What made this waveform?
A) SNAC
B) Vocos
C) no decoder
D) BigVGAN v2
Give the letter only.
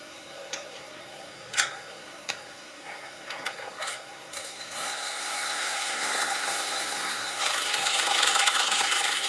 A